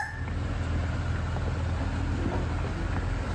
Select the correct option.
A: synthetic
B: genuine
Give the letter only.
B